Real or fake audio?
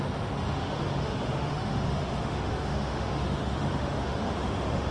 fake